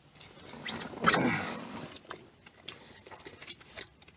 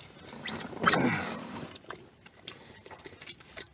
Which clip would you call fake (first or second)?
second